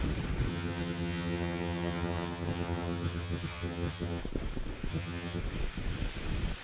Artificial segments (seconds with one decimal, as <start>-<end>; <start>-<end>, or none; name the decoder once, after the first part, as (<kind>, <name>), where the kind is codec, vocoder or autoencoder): 0.5-4.2 (vocoder, HiFi-GAN); 4.9-5.4